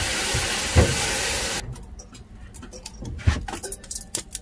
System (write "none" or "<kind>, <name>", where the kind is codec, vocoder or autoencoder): none